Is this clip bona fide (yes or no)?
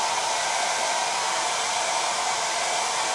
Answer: no